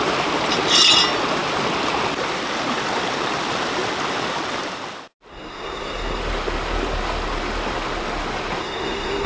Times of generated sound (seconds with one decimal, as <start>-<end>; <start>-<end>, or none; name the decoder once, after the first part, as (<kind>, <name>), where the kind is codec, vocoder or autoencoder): 5.3-6.2 (codec, SNAC); 8.6-9.3